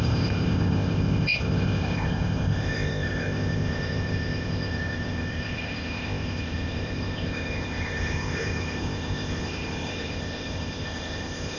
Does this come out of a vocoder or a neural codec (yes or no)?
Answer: yes